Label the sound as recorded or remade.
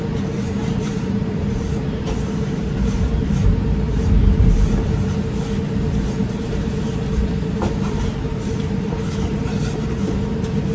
remade